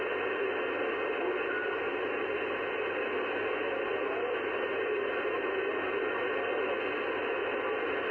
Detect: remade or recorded recorded